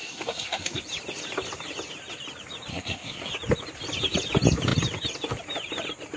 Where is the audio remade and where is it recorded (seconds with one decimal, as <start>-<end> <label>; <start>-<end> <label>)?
0.0-0.8 remade; 0.8-2.7 recorded; 2.7-3.3 remade; 3.3-6.2 recorded